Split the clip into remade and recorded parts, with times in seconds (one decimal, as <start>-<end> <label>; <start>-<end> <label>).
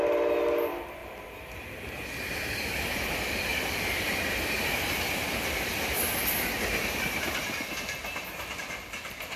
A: 0.0-1.0 recorded; 1.0-3.1 remade; 3.1-3.5 recorded; 3.5-4.2 remade; 4.2-9.4 recorded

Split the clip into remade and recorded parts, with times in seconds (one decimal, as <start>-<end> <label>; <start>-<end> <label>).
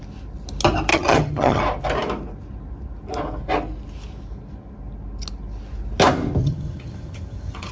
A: 0.0-0.9 recorded; 0.9-1.6 remade; 1.6-6.4 recorded; 6.4-7.7 remade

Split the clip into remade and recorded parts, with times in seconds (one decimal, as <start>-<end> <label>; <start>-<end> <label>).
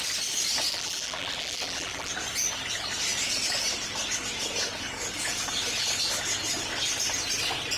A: 0.0-0.7 recorded; 0.7-2.1 remade; 2.1-7.8 recorded